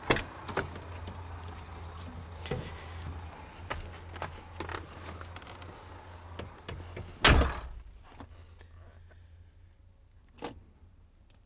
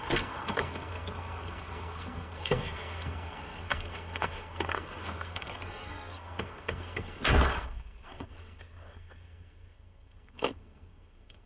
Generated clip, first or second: second